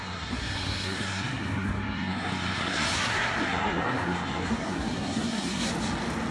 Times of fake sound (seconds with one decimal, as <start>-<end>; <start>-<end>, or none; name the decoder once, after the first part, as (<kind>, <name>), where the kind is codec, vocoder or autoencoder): 0.0-5.7 (codec, SNAC)